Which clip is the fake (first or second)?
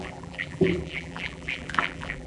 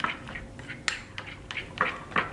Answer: first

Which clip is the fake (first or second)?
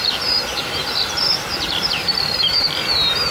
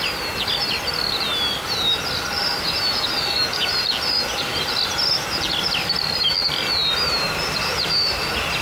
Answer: first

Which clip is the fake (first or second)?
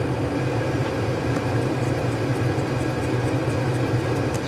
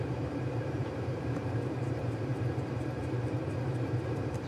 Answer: second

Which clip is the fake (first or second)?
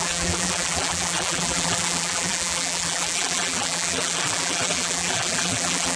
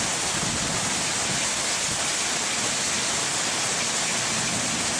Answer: first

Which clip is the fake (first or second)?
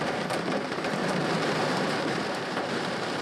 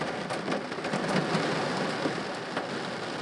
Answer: first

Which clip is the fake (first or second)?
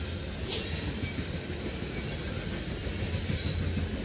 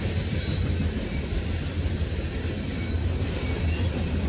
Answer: second